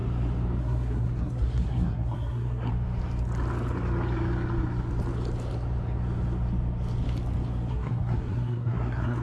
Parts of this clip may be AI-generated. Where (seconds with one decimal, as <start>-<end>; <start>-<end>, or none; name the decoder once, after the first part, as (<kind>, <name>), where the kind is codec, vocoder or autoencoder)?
0.6-2.7 (codec, SNAC); 7.7-9.2